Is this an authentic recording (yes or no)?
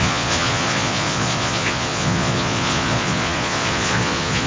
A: no